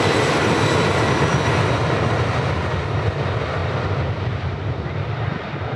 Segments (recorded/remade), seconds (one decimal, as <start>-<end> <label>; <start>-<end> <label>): 0.0-3.6 recorded; 3.6-5.2 remade; 5.2-5.8 recorded